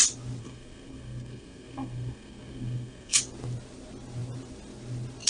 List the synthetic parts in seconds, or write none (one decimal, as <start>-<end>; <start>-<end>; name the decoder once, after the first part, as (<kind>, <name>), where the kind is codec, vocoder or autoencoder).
0.4-3.2 (codec, SNAC)